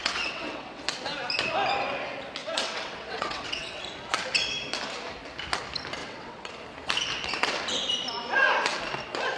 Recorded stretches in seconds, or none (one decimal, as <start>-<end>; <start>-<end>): 0.8-2.4; 3.8-6.0; 6.5-9.4